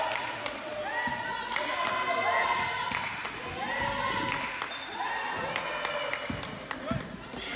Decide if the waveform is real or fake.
real